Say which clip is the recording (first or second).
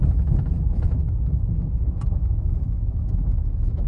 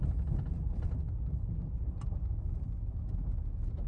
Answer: second